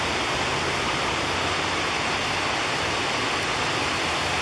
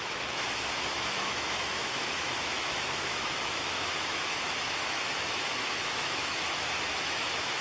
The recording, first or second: first